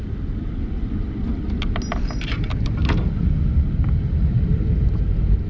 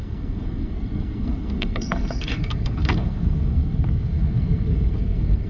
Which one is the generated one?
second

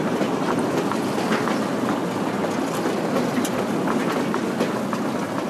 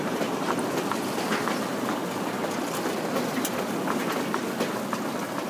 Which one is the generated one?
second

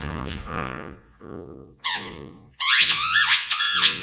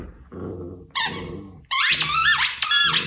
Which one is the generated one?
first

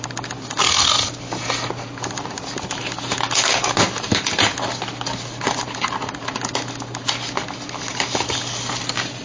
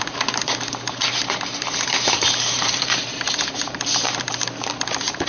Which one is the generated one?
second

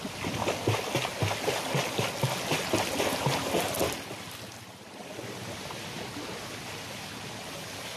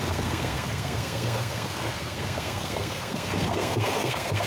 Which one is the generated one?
second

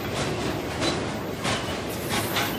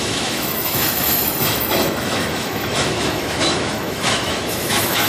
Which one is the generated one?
second